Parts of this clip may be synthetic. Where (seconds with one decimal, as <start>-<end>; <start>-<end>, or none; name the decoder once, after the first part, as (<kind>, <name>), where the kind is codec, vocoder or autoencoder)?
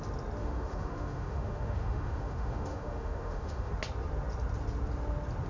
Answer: 0.4-3.7 (autoencoder, DAC-VAE)